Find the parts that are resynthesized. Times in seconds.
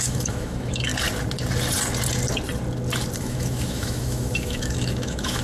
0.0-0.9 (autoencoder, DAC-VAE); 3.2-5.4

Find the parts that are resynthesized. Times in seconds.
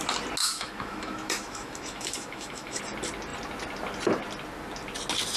0.4-2.8 (autoencoder, DAC-VAE)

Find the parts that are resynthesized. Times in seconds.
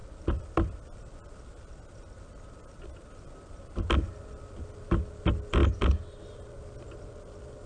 none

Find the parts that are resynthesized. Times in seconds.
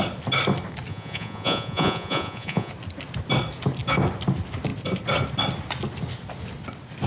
0.9-2.7 (vocoder, Vocos)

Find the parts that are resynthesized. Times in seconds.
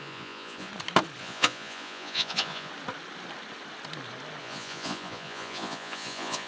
0.0-0.7 (vocoder, Vocos); 1.2-2.7; 4.4-6.5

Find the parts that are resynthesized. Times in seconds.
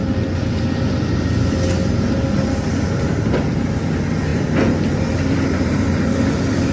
2.7-6.7 (vocoder, BigVGAN v2)